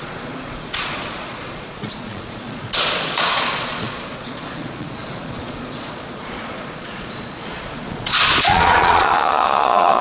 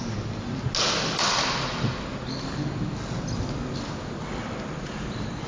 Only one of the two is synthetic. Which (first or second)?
first